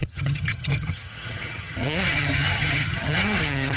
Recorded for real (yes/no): no